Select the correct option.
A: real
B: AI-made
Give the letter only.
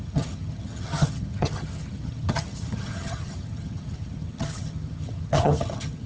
B